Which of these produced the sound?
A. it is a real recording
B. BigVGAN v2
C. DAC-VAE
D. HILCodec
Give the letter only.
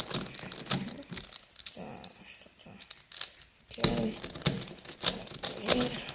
A